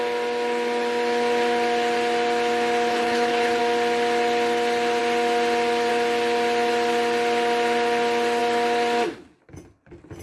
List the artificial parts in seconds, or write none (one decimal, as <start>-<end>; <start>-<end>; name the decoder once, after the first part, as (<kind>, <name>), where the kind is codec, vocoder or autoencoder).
2.9-3.6 (codec, HILCodec)